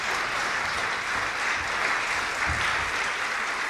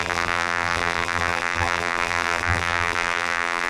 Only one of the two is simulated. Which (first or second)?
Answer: second